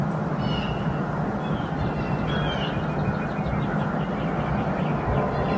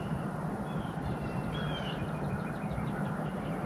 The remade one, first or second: second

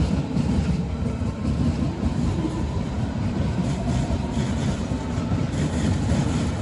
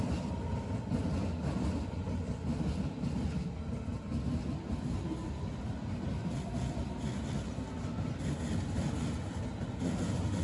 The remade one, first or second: first